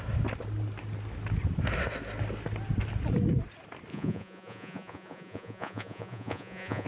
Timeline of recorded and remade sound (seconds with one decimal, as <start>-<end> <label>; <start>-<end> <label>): 0.0-3.9 recorded; 3.9-6.9 remade